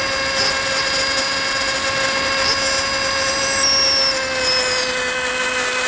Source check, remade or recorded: recorded